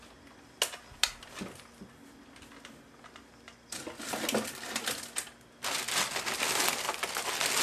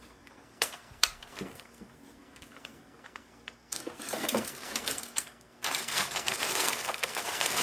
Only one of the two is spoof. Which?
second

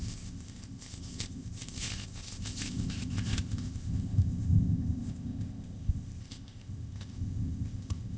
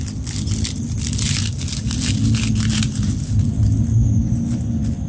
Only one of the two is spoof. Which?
first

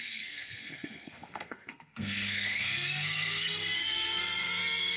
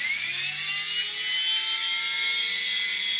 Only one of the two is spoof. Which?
first